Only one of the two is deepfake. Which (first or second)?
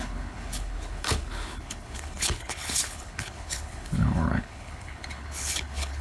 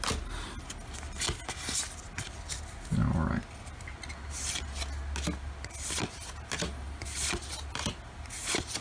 first